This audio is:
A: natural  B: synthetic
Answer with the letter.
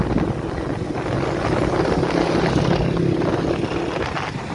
A